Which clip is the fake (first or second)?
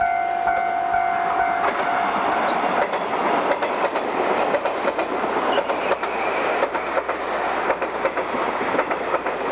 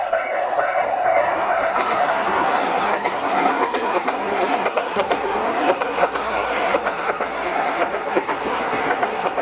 second